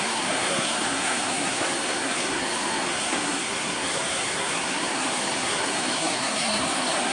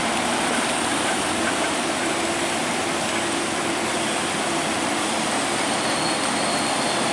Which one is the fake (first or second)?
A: first